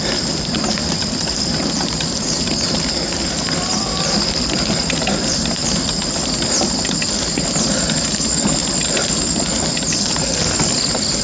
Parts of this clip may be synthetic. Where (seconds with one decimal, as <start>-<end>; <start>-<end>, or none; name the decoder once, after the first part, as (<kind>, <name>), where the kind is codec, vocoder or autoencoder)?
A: none